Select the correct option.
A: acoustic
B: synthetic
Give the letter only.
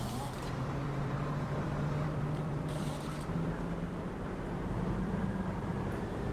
B